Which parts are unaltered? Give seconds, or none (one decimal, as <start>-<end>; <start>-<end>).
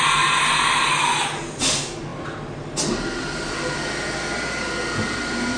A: 0.0-5.6